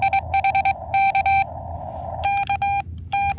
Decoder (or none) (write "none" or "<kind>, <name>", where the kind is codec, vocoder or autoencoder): none